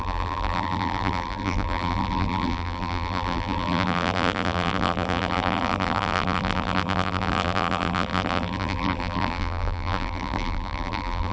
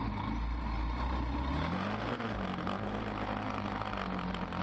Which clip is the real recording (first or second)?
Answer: second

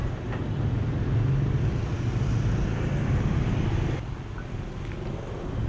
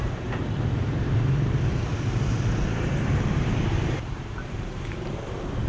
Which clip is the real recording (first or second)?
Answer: first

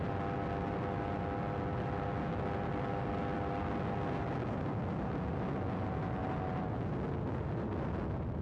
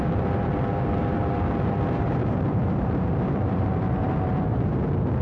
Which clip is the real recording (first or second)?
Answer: first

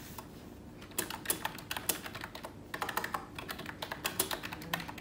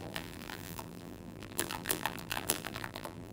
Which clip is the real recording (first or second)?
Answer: first